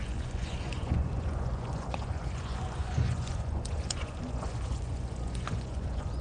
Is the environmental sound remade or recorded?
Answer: remade